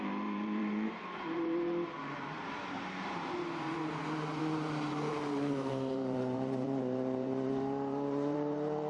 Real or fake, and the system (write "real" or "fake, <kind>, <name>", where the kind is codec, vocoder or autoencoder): fake, vocoder, BigVGAN v2